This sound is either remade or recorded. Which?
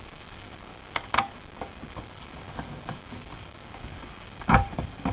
remade